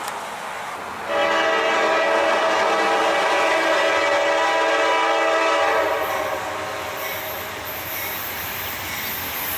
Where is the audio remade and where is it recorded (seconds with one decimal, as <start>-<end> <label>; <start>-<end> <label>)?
0.0-9.6 recorded